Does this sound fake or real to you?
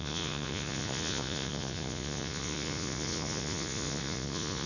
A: fake